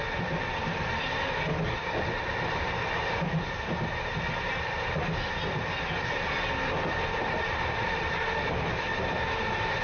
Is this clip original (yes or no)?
yes